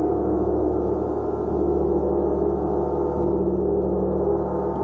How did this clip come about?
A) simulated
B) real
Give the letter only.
B